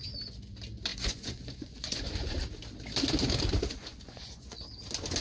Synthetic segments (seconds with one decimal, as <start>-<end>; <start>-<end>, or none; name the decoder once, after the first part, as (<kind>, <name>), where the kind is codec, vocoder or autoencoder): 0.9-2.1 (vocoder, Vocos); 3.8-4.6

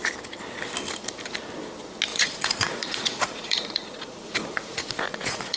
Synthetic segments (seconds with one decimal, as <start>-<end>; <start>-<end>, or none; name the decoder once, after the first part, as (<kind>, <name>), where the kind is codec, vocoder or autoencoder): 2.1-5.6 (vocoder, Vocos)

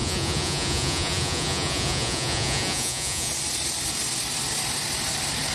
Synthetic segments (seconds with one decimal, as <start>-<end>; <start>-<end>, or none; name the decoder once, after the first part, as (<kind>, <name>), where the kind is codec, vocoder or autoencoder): 0.0-3.3 (vocoder, Vocos)

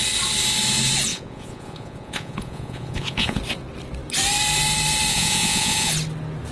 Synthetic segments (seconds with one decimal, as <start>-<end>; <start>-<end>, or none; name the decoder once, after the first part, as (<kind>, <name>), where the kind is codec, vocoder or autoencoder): 1.1-3.4 (vocoder, Vocos); 5.1-5.9

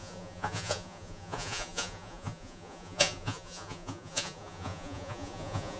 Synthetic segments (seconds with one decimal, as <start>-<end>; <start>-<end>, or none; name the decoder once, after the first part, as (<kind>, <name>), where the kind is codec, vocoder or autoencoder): 0.0-5.8 (vocoder, Vocos)